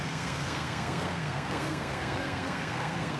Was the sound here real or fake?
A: fake